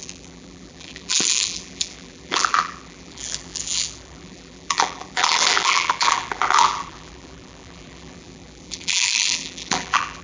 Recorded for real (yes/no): no